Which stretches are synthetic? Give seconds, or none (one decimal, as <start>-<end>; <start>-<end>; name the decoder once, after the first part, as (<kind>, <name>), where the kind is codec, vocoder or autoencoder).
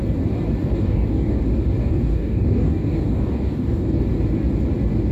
0.6-1.4 (codec, DAC); 1.8-4.0